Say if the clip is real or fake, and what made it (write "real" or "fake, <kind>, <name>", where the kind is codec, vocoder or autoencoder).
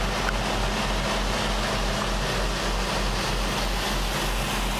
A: real